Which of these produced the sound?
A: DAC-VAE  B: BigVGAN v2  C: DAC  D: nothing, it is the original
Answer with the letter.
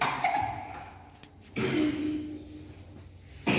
D